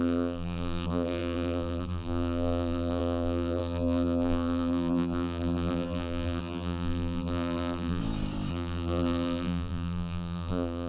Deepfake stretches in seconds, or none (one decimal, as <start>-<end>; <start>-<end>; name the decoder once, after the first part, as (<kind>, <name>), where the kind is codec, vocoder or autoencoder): 0.0-8.0 (vocoder, BigVGAN v2); 8.5-10.9